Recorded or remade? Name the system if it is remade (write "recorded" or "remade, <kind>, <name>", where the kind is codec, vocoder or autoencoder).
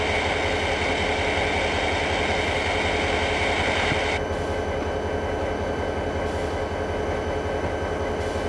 recorded